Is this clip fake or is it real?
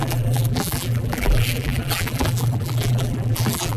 fake